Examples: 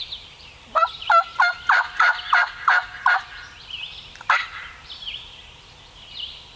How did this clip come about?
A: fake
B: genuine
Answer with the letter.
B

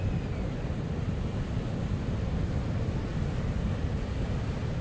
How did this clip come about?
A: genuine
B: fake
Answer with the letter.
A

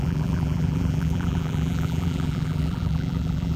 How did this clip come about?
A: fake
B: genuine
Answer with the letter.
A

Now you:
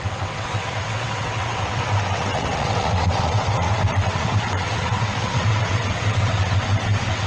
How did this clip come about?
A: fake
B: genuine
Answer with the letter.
A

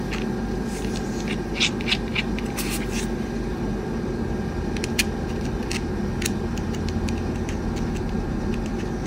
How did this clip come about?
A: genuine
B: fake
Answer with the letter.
A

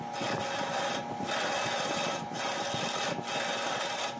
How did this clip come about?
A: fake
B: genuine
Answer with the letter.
B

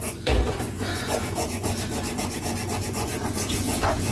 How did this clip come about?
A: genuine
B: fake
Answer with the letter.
B